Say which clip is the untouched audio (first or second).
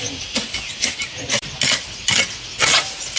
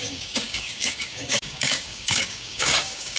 first